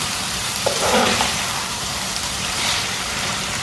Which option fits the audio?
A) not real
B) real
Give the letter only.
A